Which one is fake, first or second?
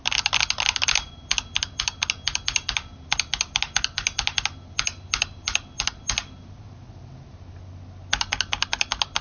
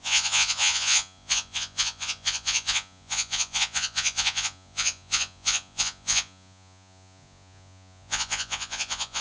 second